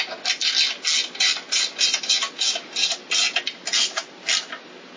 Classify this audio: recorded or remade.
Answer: recorded